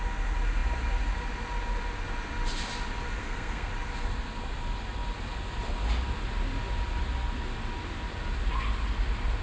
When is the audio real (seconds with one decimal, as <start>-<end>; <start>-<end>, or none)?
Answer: 0.0-3.2; 3.7-9.4